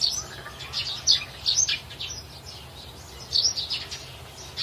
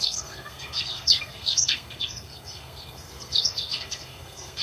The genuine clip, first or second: first